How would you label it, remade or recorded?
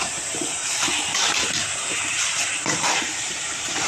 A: remade